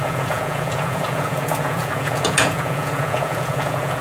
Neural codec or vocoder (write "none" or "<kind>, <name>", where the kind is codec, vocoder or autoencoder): vocoder, Vocos